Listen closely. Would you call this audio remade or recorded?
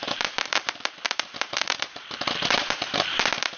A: remade